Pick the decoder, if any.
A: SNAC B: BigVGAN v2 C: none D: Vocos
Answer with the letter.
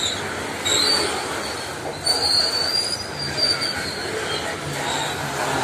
C